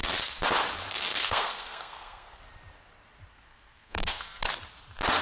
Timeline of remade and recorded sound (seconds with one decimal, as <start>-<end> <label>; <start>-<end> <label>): 0.0-1.2 recorded; 1.2-2.4 remade; 2.4-3.3 recorded; 3.3-4.4 remade; 4.4-5.2 recorded